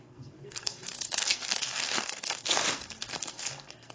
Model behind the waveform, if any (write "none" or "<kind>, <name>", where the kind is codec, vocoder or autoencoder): codec, SNAC